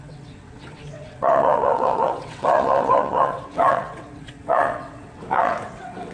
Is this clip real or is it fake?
fake